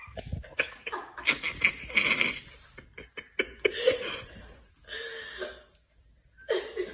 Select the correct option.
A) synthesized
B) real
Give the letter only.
B